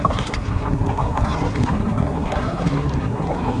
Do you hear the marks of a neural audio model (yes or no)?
yes